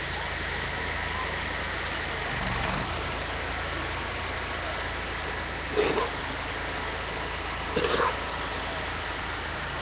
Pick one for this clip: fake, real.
real